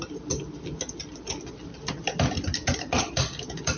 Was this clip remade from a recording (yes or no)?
no